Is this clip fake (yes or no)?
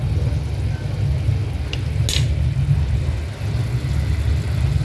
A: no